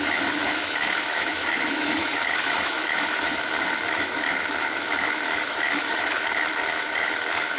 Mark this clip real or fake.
fake